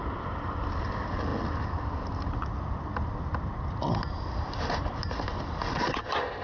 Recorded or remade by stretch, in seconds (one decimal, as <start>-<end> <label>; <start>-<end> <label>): 0.0-6.4 recorded